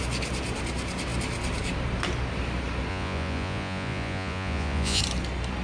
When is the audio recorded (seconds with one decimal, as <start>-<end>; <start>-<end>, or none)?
0.0-2.9; 5.0-5.6